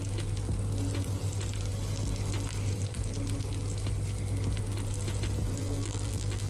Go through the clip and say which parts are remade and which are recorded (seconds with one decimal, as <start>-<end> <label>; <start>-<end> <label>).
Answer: 0.0-5.6 recorded; 5.6-6.5 remade